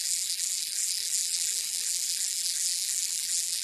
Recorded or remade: remade